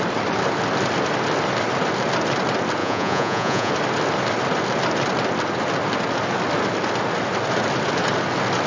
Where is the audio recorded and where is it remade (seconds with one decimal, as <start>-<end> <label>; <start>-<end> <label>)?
0.0-2.8 recorded; 2.8-3.7 remade; 3.7-8.7 recorded